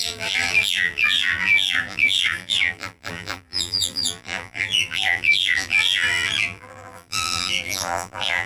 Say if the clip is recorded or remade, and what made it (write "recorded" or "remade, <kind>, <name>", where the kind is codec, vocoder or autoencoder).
remade, vocoder, BigVGAN v2